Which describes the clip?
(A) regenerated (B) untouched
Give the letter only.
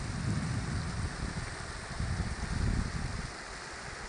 B